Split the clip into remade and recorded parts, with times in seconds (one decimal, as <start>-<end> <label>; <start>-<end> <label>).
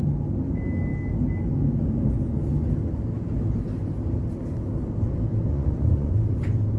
0.0-5.5 recorded; 5.5-6.1 remade; 6.1-6.8 recorded